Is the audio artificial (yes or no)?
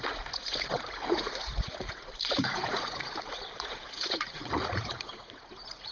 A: yes